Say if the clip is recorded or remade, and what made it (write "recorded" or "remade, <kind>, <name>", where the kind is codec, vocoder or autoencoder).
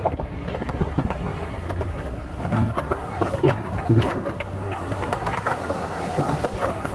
remade, codec, SNAC